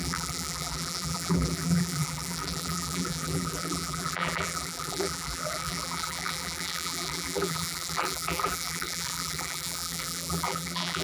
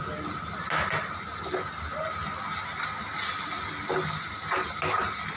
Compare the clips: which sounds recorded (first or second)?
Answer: second